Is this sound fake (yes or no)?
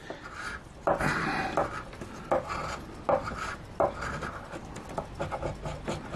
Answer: no